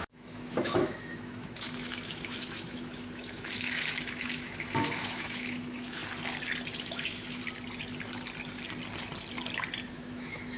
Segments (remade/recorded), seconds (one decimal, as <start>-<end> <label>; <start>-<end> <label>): 0.0-6.0 remade; 6.0-6.8 recorded; 6.8-7.4 remade; 7.4-9.9 recorded; 9.9-10.6 remade